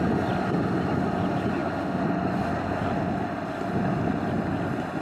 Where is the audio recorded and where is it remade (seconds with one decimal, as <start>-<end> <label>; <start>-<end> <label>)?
0.0-5.0 recorded